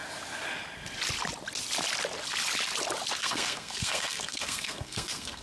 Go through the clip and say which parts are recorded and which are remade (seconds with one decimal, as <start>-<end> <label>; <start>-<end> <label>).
0.0-3.2 recorded; 3.2-5.4 remade